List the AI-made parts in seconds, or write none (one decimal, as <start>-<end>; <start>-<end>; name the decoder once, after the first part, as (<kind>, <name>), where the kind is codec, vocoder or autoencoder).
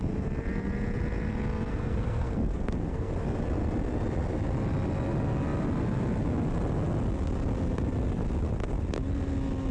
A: 1.7-3.1 (codec, SNAC)